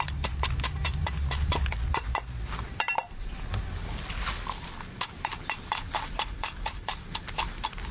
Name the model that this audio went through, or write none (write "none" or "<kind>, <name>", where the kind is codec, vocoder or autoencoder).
none